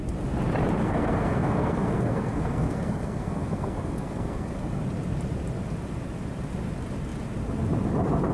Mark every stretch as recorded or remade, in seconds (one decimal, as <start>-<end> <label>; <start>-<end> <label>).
0.0-0.8 recorded; 0.8-4.8 remade; 4.8-8.3 recorded